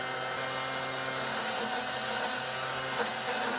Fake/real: real